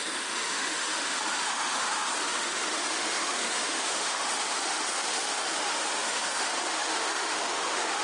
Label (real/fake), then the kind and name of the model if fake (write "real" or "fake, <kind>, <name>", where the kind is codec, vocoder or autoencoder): fake, autoencoder, DAC-VAE